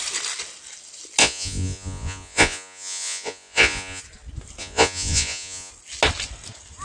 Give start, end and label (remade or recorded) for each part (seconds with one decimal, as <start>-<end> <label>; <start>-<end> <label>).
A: 0.0-1.2 recorded; 1.2-4.0 remade; 4.0-4.6 recorded; 4.6-5.7 remade; 5.7-6.8 recorded